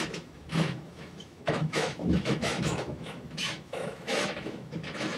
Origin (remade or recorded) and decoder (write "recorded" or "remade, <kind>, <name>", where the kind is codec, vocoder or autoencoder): remade, autoencoder, DAC-VAE